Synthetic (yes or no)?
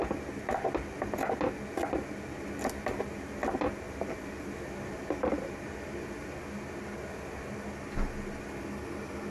no